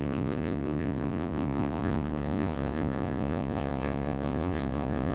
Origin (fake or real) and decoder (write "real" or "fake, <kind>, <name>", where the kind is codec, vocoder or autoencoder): fake, vocoder, Vocos